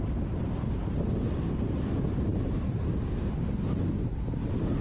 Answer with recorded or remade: recorded